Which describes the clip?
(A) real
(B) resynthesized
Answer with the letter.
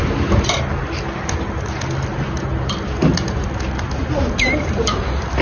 A